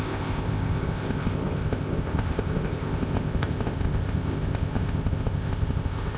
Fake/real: fake